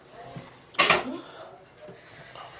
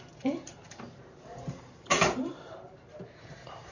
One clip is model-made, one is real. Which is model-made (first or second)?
second